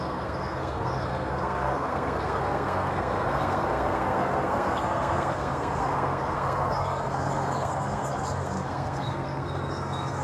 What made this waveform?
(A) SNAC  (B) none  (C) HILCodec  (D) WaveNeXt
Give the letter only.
A